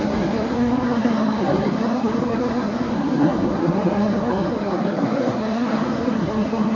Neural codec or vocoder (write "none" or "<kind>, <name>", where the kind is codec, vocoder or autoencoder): codec, SNAC